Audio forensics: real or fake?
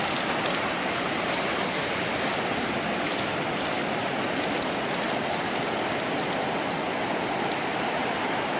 real